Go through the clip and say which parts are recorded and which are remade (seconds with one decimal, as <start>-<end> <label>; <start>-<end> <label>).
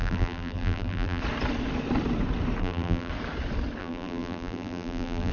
0.0-1.2 remade; 1.2-2.6 recorded; 2.6-3.1 remade; 3.1-3.8 recorded; 3.8-5.3 remade